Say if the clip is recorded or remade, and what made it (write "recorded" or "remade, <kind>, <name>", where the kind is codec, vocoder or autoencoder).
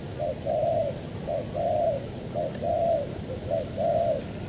recorded